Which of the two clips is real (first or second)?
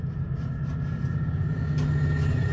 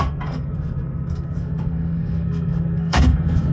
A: first